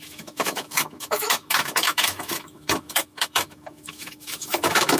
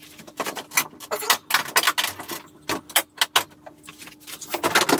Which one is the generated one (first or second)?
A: first